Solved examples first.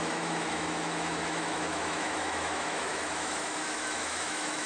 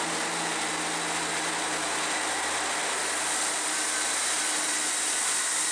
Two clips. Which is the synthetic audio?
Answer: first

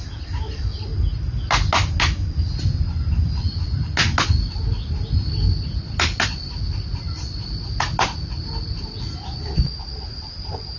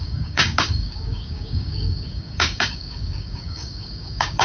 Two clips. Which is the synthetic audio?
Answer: second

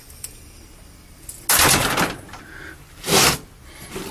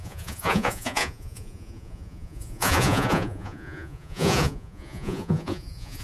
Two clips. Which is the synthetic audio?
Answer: second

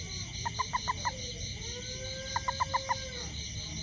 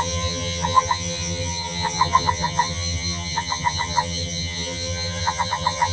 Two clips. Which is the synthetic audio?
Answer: second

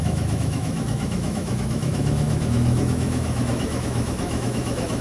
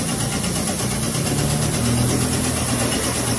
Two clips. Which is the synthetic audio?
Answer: first